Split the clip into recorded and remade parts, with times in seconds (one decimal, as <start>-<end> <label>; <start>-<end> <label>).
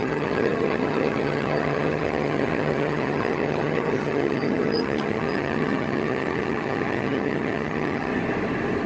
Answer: 0.0-8.1 remade; 8.1-8.9 recorded